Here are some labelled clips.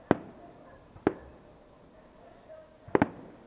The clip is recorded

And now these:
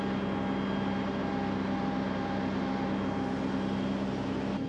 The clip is recorded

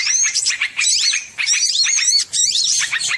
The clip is remade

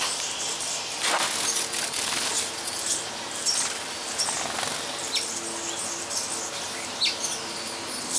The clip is recorded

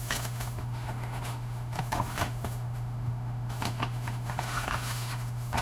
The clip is remade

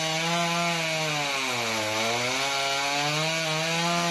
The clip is recorded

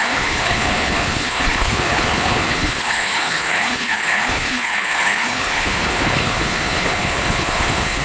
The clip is remade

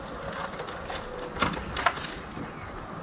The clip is recorded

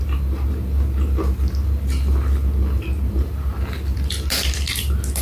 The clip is recorded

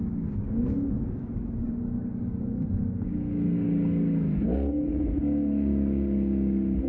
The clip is remade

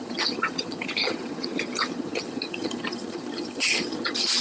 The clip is remade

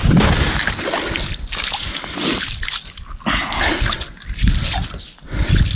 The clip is recorded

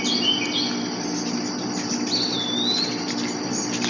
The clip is recorded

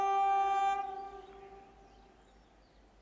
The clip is recorded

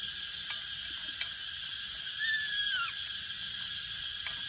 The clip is recorded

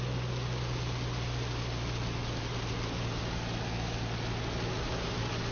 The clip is recorded